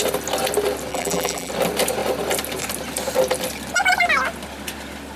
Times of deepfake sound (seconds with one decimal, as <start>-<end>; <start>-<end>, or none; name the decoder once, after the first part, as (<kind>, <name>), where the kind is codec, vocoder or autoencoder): 0.9-1.5 (vocoder, BigVGAN v2)